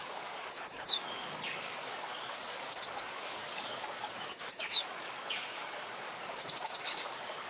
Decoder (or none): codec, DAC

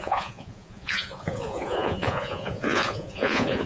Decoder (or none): vocoder, Vocos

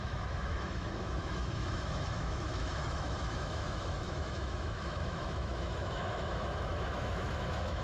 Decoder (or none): autoencoder, DAC-VAE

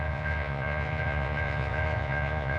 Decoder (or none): vocoder, Vocos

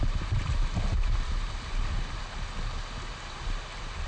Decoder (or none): none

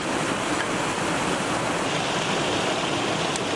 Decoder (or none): none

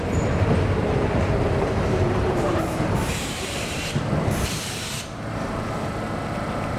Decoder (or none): vocoder, BigVGAN v2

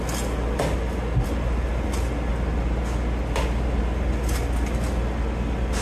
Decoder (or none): none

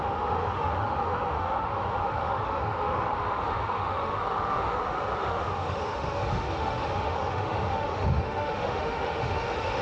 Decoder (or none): autoencoder, DAC-VAE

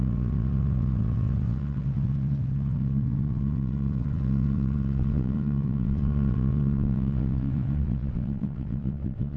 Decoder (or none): vocoder, WaveNeXt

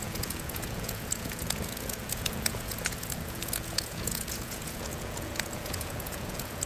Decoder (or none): vocoder, Vocos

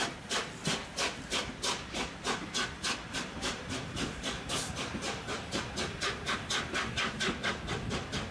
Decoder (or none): none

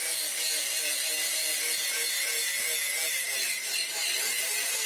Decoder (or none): vocoder, BigVGAN v2